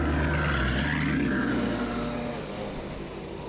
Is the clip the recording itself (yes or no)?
yes